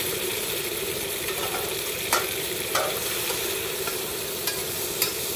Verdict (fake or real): fake